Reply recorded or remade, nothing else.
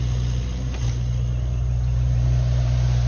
remade